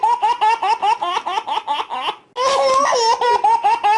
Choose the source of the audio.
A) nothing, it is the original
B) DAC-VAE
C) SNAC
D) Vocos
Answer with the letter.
A